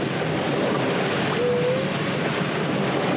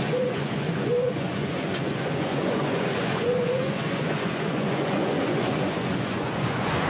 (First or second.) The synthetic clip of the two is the second